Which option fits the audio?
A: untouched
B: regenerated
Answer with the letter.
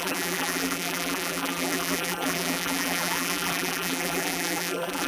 B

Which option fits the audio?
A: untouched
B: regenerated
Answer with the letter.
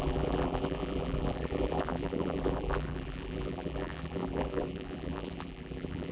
B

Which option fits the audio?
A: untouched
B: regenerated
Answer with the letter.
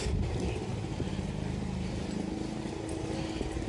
A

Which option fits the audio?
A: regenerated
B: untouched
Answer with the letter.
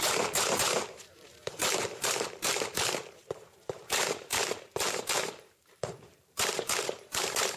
A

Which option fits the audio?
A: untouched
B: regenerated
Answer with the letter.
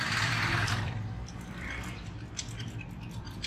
B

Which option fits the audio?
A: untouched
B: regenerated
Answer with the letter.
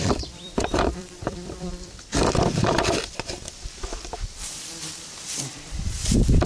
B